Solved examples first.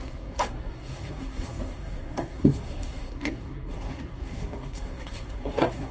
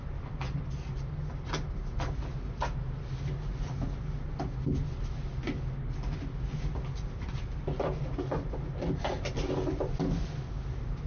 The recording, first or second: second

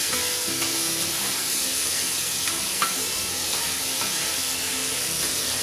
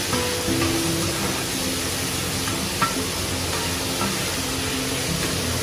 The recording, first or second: second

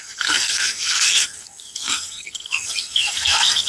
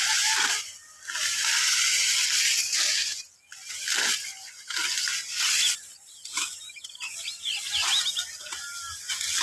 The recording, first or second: second